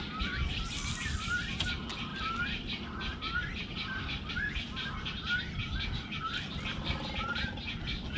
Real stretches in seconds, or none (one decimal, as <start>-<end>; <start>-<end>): 0.0-8.2